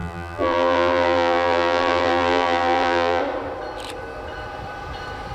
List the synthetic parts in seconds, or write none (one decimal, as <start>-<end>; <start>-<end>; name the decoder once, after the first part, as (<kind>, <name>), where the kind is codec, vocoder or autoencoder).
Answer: 0.0-3.2 (vocoder, BigVGAN v2)